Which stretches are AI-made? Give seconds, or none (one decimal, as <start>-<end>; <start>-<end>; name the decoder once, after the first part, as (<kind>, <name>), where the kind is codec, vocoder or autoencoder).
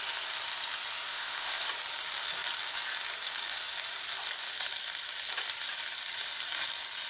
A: 1.1-1.7 (codec, ZipCodec)